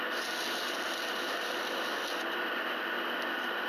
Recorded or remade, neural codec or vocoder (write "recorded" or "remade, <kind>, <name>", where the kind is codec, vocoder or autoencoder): recorded